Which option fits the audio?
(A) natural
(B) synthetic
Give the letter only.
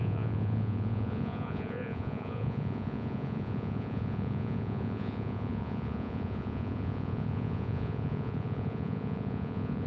B